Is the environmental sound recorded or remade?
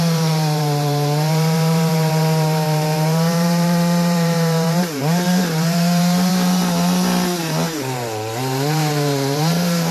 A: remade